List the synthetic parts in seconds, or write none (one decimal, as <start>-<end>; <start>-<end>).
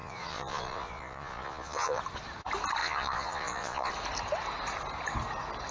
0.0-2.0; 2.8-3.9